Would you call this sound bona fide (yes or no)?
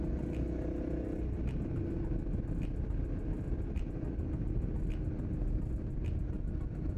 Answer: yes